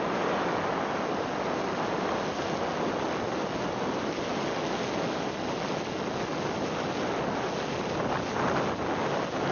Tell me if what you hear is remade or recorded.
recorded